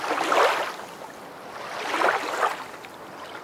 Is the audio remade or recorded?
recorded